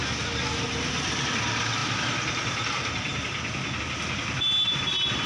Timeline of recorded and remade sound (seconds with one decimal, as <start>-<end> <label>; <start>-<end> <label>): 0.0-5.3 recorded